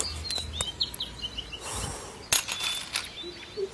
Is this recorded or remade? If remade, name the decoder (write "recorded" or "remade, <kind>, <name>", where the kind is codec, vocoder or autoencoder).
recorded